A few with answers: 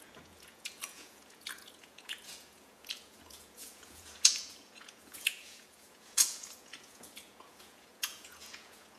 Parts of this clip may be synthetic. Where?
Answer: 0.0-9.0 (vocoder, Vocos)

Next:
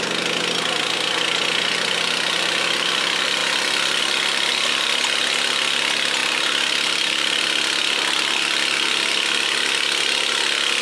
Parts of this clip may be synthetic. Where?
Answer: 6.2-7.4 (vocoder, BigVGAN v2)